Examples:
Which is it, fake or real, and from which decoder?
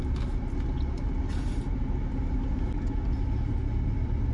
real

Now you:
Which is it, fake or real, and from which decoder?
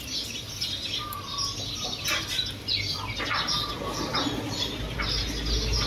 real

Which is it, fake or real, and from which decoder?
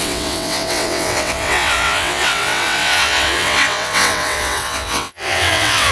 fake, vocoder, WaveNeXt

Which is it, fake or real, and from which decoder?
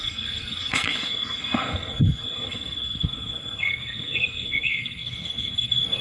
fake, codec, SNAC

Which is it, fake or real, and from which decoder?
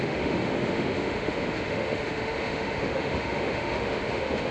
fake, autoencoder, DAC-VAE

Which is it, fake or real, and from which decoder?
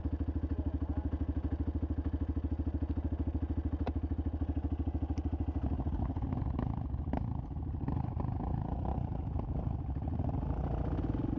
real